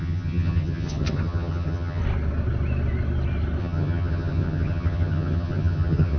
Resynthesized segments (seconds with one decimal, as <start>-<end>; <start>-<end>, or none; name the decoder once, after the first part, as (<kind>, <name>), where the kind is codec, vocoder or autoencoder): 0.0-2.0 (vocoder, HiFi-GAN); 3.6-6.2